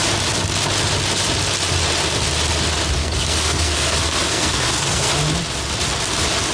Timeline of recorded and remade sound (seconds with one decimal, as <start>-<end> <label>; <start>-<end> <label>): 0.0-3.0 recorded; 3.0-5.1 remade; 5.1-6.5 recorded

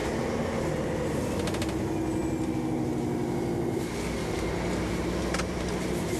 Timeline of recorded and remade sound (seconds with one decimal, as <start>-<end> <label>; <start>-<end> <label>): 0.0-6.2 recorded